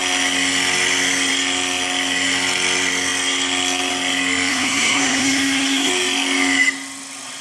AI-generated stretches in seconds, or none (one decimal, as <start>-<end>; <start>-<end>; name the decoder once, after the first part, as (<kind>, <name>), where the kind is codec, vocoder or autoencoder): 4.5-5.9 (codec, SNAC)